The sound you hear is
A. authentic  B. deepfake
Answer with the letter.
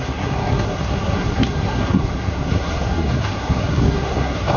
B